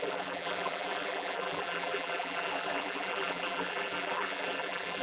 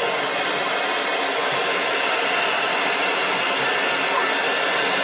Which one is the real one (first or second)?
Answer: second